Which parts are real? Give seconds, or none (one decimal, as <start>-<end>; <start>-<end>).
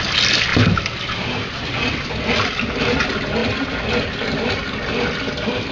0.0-5.7